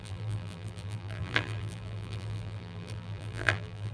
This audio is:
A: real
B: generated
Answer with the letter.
B